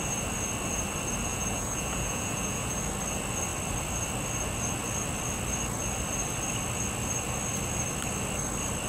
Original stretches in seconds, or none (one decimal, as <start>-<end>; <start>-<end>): 0.0-1.3; 2.8-8.9